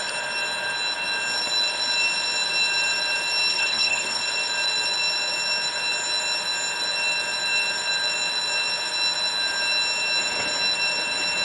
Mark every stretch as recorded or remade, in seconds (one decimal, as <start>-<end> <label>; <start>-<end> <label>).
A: 0.0-3.5 recorded; 3.5-4.2 remade; 4.2-11.4 recorded